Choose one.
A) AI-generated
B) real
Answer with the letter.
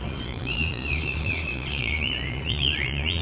A